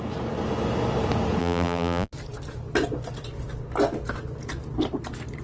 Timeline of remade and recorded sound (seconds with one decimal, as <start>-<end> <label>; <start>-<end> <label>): 0.0-1.4 recorded; 1.4-2.1 remade; 2.1-5.4 recorded